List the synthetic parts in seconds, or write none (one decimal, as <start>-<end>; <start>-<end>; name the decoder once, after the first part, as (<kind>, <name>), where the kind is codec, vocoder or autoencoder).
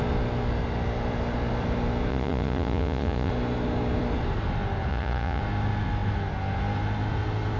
2.1-3.3 (vocoder, Vocos); 4.9-5.4